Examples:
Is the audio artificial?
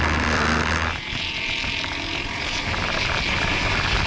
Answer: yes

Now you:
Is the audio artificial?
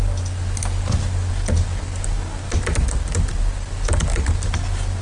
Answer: no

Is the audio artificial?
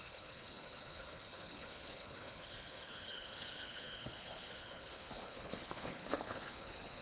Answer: yes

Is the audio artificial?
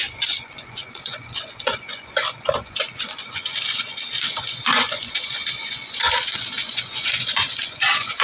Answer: yes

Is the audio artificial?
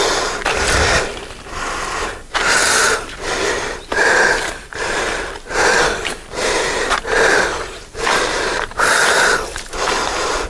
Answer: yes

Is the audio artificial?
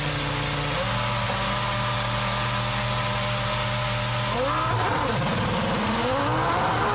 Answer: no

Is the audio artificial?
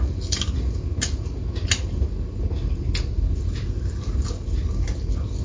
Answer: no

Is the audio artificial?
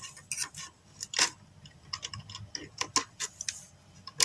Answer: no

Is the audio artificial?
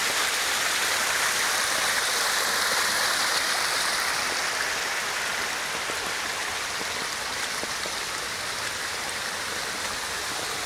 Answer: yes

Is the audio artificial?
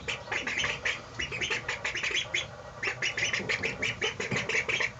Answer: no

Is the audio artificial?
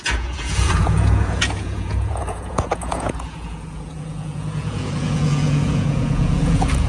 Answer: yes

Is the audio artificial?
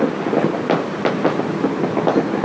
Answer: no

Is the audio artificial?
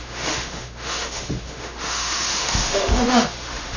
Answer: yes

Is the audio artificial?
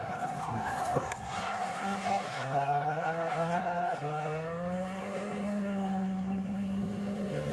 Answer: yes